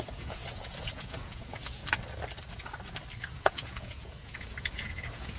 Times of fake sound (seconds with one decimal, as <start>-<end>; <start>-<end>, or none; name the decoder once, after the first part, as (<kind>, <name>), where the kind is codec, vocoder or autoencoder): 0.0-1.8 (vocoder, Vocos); 3.2-5.4